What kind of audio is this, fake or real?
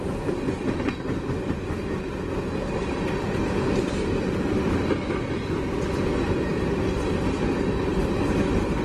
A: real